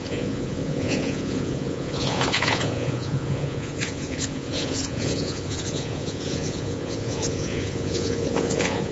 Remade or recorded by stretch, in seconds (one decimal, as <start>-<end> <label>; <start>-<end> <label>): 0.0-8.9 remade